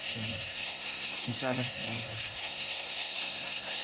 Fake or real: fake